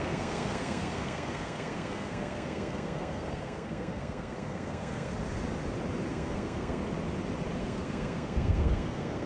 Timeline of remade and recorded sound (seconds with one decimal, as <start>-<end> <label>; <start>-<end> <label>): 0.0-5.1 remade; 5.1-6.1 recorded; 6.1-6.8 remade; 6.8-7.6 recorded; 7.6-9.3 remade